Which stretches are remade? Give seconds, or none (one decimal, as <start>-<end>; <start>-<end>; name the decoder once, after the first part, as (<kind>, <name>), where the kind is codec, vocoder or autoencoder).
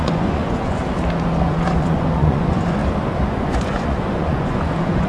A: 0.0-0.8 (vocoder, Vocos); 1.4-2.8; 3.4-5.1